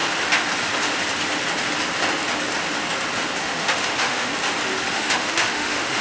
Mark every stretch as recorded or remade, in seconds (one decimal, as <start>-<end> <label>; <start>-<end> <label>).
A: 0.0-3.4 recorded; 3.4-4.3 remade; 4.3-4.9 recorded; 4.9-6.0 remade